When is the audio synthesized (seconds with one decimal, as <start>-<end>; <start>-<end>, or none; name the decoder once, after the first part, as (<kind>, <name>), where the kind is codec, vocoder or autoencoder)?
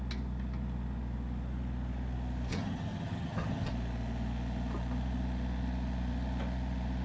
2.5-3.7 (vocoder, HiFi-GAN)